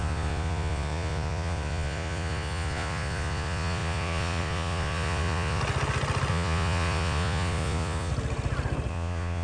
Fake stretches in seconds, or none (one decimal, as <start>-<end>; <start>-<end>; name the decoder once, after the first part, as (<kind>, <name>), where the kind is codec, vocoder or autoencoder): 0.0-5.6 (vocoder, Vocos); 6.3-8.1; 8.9-9.4